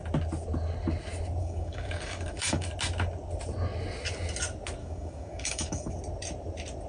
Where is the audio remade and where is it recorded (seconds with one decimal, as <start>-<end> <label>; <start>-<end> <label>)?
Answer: 0.0-1.4 recorded; 1.4-2.7 remade; 2.7-4.8 recorded; 4.8-5.9 remade; 5.9-6.9 recorded

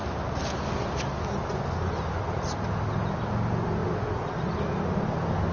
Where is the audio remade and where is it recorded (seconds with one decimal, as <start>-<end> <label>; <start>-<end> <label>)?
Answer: 0.0-5.5 recorded

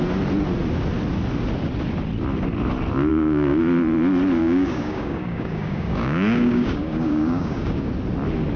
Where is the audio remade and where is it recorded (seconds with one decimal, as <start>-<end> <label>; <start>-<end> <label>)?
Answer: 0.0-3.1 recorded; 3.1-3.6 remade; 3.6-4.4 recorded; 4.4-7.9 remade; 7.9-8.6 recorded

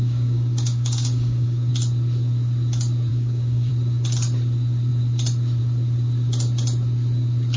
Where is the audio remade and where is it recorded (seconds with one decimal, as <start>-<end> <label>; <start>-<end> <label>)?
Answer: 0.0-1.7 remade; 1.7-3.1 recorded; 3.1-3.7 remade; 3.7-7.6 recorded

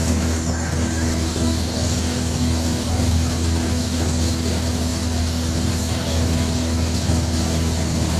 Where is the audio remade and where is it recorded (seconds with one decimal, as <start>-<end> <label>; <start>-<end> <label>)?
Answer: 0.0-8.2 remade

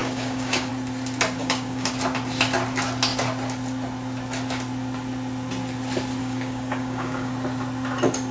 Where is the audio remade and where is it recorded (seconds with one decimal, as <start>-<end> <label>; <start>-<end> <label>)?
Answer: 0.0-0.7 remade; 0.7-1.4 recorded; 1.4-1.9 remade; 1.9-6.2 recorded; 6.2-7.3 remade; 7.3-8.3 recorded